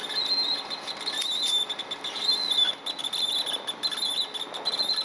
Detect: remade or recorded recorded